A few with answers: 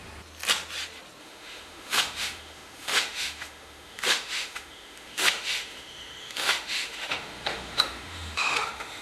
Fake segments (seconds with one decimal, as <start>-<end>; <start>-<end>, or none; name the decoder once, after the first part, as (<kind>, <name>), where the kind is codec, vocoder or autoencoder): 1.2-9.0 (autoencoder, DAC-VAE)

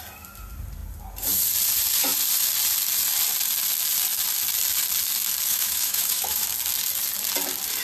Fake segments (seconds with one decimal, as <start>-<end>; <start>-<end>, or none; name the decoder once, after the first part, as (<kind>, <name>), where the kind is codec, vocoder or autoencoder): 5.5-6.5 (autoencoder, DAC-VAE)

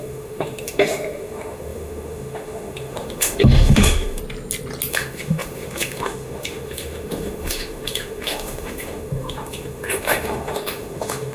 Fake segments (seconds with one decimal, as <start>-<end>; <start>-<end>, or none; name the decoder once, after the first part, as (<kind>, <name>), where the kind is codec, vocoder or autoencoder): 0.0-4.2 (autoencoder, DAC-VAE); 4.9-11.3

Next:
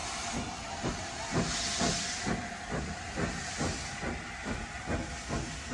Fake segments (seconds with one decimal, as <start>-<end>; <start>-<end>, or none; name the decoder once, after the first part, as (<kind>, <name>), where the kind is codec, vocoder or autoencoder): none

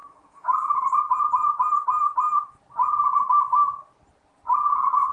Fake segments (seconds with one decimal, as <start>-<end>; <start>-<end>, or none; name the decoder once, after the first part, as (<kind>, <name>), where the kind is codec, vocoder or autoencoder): 0.0-1.0 (autoencoder, DAC-VAE)

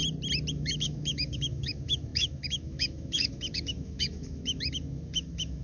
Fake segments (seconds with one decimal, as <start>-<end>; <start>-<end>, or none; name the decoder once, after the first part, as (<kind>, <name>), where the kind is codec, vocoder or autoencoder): 0.5-5.6 (autoencoder, DAC-VAE)

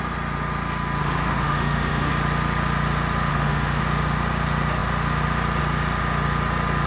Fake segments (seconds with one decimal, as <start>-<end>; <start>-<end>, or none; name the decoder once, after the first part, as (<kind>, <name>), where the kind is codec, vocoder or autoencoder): 1.0-2.1 (autoencoder, DAC-VAE); 3.3-3.8

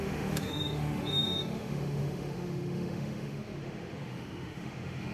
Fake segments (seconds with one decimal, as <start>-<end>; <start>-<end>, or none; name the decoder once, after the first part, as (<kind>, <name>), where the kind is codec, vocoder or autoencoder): 0.0-5.1 (autoencoder, DAC-VAE)